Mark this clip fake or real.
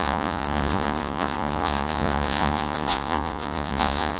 fake